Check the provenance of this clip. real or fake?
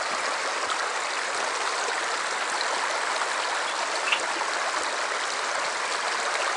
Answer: real